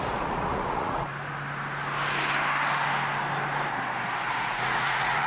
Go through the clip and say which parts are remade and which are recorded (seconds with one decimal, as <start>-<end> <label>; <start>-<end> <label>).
0.0-1.1 remade; 1.1-4.3 recorded; 4.3-5.3 remade